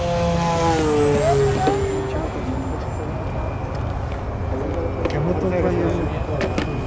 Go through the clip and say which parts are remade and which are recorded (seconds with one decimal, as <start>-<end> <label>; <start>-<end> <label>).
0.0-6.9 recorded